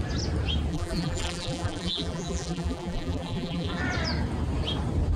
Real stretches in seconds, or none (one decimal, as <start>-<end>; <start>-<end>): 0.0-0.7; 3.8-5.2